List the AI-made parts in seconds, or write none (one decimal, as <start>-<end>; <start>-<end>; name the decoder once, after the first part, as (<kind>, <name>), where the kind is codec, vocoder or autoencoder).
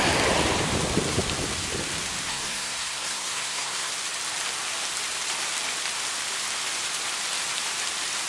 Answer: 2.3-3.9 (codec, SNAC)